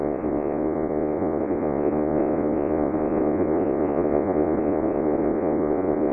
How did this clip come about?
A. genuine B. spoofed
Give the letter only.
B